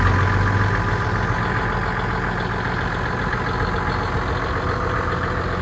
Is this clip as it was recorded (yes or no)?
yes